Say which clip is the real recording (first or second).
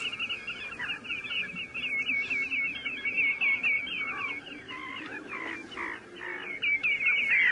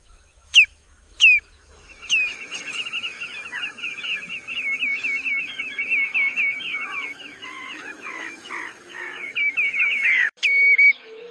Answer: first